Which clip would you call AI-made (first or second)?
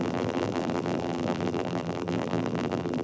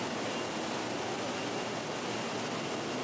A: first